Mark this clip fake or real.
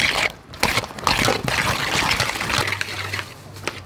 real